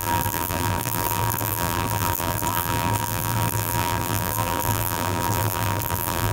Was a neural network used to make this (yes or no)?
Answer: yes